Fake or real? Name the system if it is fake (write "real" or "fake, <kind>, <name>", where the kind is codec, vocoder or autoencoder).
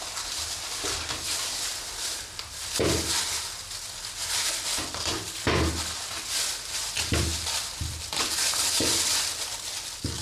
real